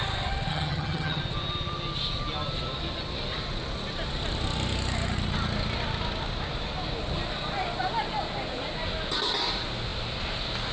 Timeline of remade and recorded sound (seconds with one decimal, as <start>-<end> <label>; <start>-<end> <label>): 0.0-0.5 recorded; 0.5-1.2 remade; 1.2-10.7 recorded